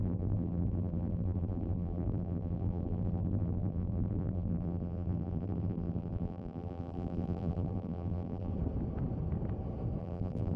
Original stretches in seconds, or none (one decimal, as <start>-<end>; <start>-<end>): 8.5-10.0